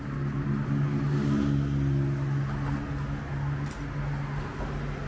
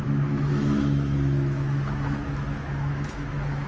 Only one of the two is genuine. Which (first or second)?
first